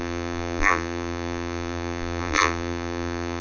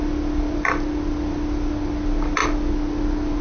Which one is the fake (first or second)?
first